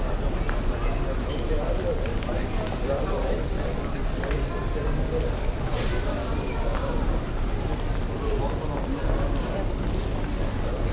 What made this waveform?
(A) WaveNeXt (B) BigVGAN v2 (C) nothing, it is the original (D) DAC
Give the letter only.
C